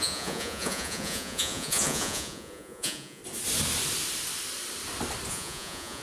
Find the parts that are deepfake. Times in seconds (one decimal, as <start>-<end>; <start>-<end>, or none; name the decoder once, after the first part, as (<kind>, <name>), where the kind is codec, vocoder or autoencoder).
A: 0.0-3.2 (vocoder, Vocos); 5.3-6.0